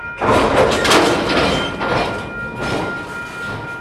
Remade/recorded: recorded